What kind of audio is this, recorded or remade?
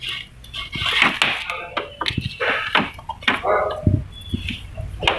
recorded